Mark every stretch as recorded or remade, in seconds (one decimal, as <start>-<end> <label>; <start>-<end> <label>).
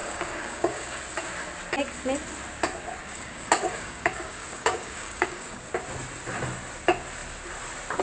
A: 0.0-1.0 remade; 1.0-3.0 recorded; 3.0-5.6 remade; 5.6-8.0 recorded